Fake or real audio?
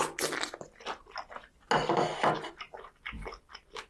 real